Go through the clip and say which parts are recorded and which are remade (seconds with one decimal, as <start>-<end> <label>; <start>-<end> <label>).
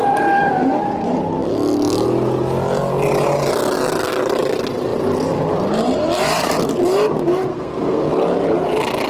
0.0-7.5 recorded; 7.5-8.1 remade; 8.1-9.1 recorded